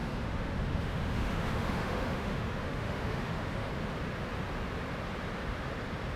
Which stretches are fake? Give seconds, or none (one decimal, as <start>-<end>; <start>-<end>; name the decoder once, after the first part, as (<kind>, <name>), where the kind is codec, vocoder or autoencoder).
0.0-3.7 (autoencoder, DAC-VAE)